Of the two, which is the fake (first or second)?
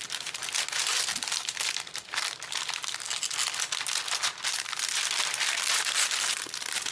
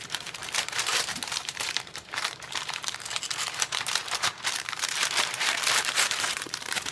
second